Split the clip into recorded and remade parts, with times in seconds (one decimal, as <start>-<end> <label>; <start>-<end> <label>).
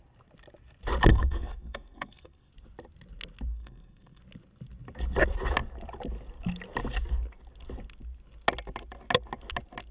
0.0-1.1 recorded; 1.1-2.5 remade; 2.5-3.5 recorded; 3.5-4.2 remade; 4.2-9.9 recorded